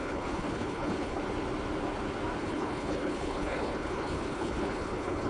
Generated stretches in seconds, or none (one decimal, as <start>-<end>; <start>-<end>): 0.0-1.2; 2.4-5.3